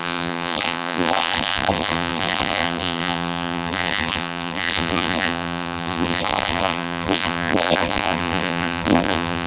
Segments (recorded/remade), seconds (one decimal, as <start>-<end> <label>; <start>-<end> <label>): 0.0-9.5 remade